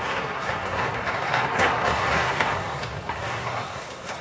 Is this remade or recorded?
remade